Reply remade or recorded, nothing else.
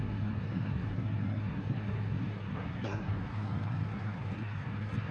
remade